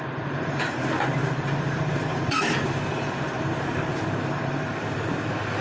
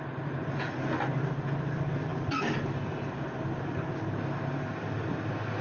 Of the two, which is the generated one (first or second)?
first